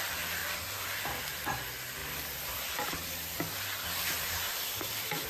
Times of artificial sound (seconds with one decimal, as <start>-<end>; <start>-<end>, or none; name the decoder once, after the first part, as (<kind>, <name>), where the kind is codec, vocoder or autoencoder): 2.0-5.3 (vocoder, BigVGAN v2)